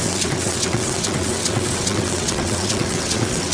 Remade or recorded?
remade